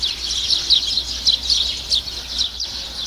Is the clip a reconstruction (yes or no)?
no